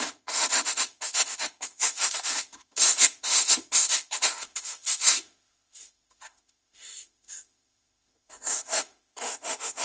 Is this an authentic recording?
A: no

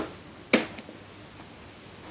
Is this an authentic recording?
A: yes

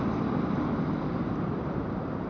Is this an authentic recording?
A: yes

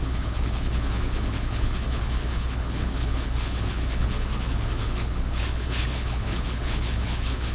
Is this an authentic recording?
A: no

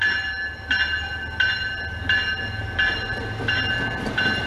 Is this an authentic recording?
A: yes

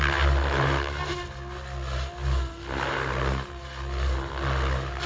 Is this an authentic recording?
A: yes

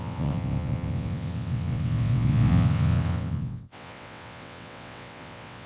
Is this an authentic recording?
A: no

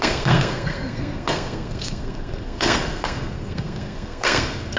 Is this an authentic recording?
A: no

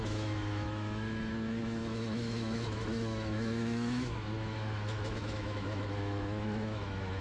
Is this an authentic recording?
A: no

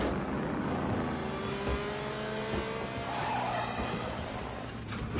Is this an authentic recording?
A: yes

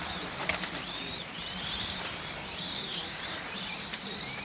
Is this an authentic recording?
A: no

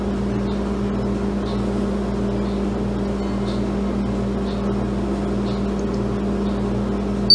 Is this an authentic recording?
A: yes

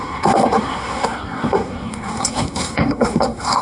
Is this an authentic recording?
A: no